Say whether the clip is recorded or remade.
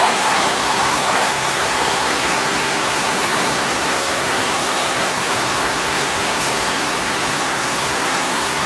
remade